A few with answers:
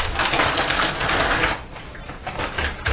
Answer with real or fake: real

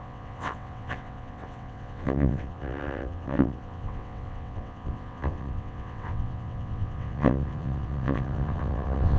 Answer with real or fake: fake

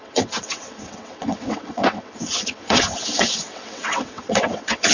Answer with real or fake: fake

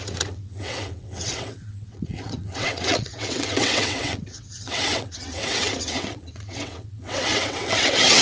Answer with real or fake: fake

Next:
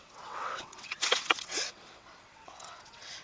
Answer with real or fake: fake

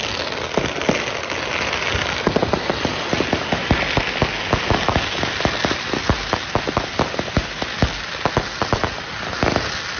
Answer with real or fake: real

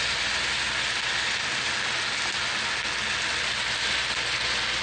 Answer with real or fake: real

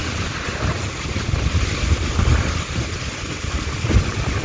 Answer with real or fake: real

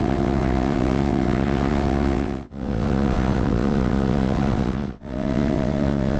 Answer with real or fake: fake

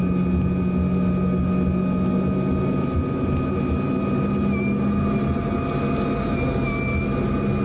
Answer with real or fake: real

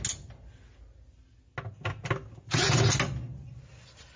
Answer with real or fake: real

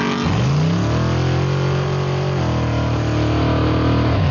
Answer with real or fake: real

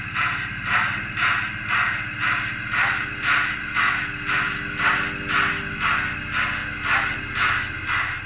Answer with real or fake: real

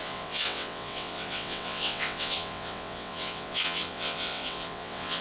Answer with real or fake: fake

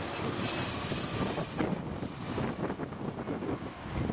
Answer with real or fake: real